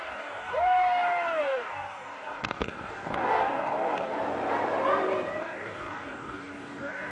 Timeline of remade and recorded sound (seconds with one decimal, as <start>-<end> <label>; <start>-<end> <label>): 0.0-4.2 remade; 4.2-5.4 recorded; 5.4-7.1 remade